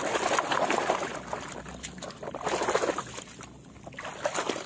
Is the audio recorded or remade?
recorded